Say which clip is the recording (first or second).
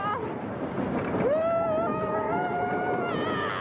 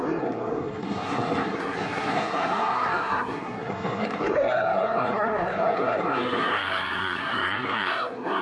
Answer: first